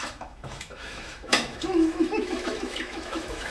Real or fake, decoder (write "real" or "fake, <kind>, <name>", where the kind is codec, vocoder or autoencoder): fake, autoencoder, DAC-VAE